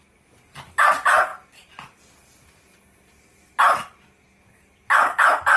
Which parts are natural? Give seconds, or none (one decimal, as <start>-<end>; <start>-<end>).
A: none